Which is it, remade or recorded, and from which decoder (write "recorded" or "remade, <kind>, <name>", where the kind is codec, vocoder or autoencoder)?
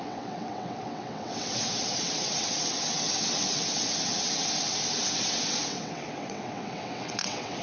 remade, vocoder, WaveNeXt